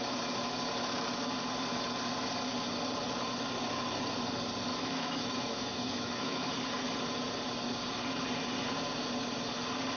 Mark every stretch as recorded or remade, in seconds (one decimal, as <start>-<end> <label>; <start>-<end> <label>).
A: 0.0-4.7 recorded; 4.7-6.5 remade; 6.5-10.0 recorded